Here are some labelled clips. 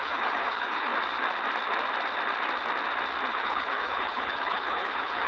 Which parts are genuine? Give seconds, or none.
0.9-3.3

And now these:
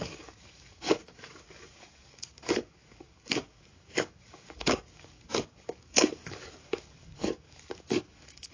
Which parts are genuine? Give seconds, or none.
none

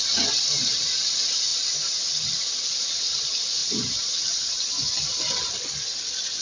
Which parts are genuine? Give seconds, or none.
0.0-6.4